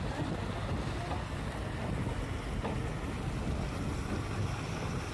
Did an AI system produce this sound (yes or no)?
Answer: no